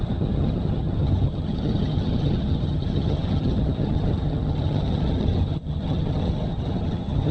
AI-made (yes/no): yes